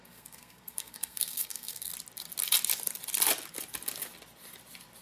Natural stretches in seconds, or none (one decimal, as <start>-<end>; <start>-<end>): 1.9-5.0

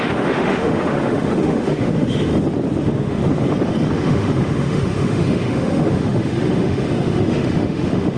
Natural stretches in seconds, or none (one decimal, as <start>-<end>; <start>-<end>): 2.3-2.8; 3.2-3.9

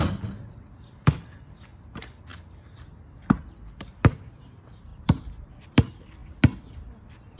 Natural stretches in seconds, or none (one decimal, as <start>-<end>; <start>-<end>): 0.0-4.9; 5.5-7.4

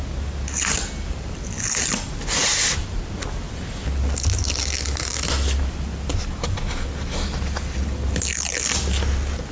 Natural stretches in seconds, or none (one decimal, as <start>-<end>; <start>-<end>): 0.0-9.5

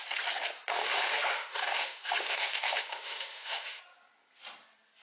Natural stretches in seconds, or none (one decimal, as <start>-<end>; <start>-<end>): 0.0-0.8; 3.8-5.0